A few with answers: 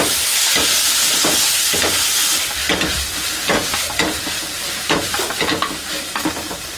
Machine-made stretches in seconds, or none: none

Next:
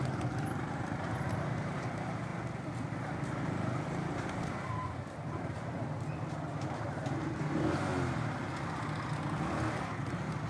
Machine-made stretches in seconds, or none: 0.0-2.3; 3.9-7.9; 10.1-10.5

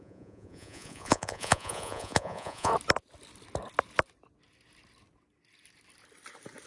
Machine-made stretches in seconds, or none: 0.0-2.7

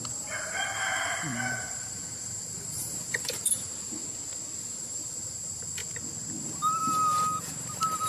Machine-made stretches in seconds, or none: 0.0-4.0; 4.6-5.8; 6.4-8.1

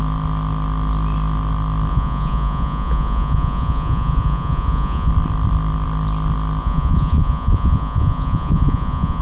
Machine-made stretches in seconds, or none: 1.9-5.1; 6.6-9.2

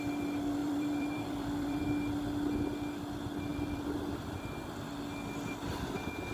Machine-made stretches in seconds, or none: 0.6-1.8; 3.5-4.5

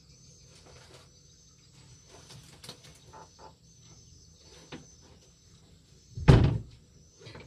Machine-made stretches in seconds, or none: none

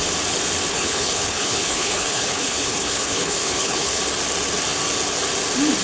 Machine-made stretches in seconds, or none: 0.7-4.0